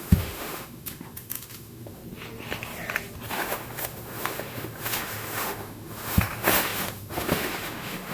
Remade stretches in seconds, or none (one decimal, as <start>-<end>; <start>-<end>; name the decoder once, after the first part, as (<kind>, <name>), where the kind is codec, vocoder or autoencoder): 0.0-2.0 (autoencoder, DAC-VAE); 3.3-8.1